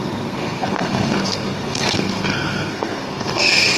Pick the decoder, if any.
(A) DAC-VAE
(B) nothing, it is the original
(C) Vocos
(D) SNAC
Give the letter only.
D